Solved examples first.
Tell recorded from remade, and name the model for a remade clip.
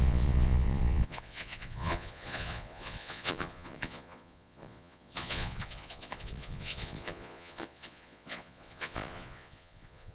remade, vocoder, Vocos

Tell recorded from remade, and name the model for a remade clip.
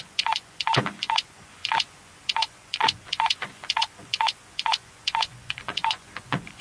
remade, vocoder, Vocos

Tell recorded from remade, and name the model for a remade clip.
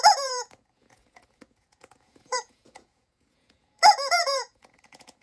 remade, vocoder, Vocos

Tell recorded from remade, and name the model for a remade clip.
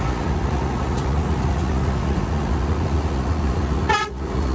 remade, vocoder, Vocos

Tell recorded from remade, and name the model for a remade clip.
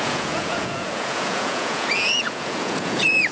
remade, vocoder, Vocos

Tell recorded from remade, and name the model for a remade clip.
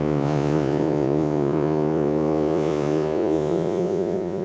remade, vocoder, Vocos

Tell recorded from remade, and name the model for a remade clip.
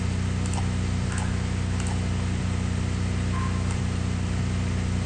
recorded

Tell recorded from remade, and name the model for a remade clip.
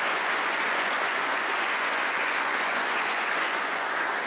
remade, vocoder, Vocos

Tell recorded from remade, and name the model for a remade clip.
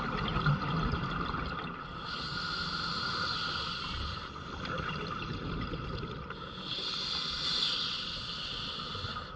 recorded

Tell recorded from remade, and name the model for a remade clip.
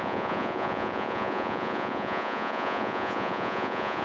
remade, vocoder, Vocos